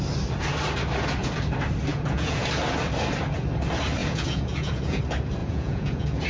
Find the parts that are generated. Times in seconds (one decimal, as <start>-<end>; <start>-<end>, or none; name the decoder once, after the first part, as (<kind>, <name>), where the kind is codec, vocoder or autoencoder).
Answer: 1.9-2.5 (vocoder, Vocos); 4.0-5.0; 5.4-6.3